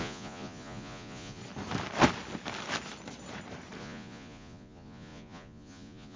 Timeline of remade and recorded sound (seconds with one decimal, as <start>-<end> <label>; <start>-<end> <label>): 0.0-1.4 remade; 1.4-3.8 recorded; 3.8-6.2 remade